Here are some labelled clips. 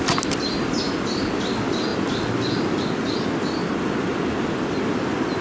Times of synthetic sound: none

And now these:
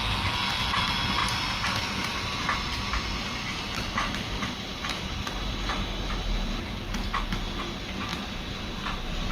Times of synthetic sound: 1.2-6.1; 8.1-8.6

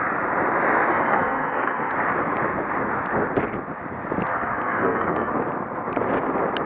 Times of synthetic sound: 0.9-1.9; 4.3-5.3

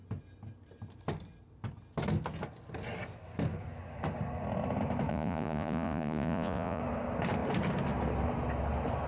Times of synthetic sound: 5.1-6.8

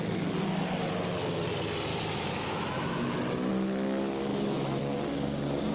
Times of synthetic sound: 1.9-3.5; 4.3-4.8

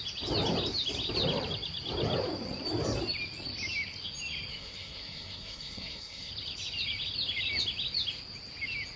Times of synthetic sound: 4.5-6.3

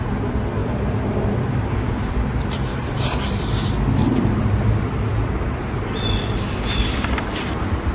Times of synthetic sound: 0.6-2.1; 2.7-6.8